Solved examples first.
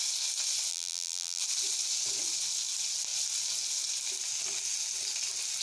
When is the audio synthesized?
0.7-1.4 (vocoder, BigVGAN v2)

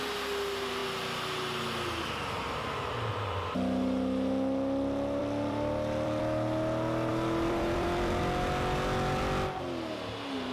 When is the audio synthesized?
5.2-6.2 (vocoder, BigVGAN v2); 7.1-8.2

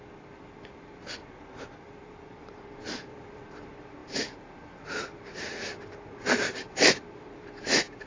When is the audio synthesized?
0.0-8.1 (vocoder, BigVGAN v2)

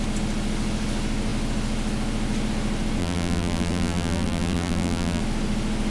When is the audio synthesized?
3.0-5.2 (vocoder, BigVGAN v2)

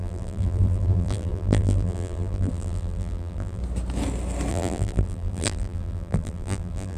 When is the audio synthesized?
0.0-3.6 (vocoder, BigVGAN v2); 4.5-7.0

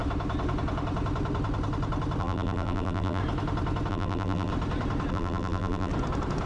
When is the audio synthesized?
2.2-3.2 (vocoder, BigVGAN v2); 3.9-4.5; 5.1-5.9